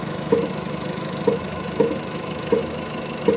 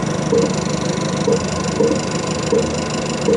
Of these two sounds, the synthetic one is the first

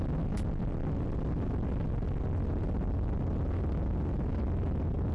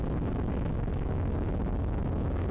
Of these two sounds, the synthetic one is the second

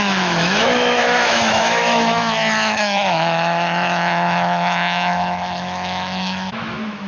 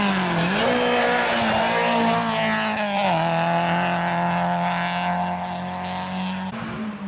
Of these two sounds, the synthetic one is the first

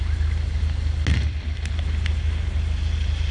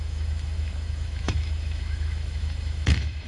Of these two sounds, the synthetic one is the second